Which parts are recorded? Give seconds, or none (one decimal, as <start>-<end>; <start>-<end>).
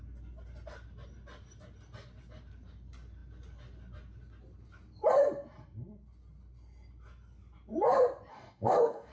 0.0-8.3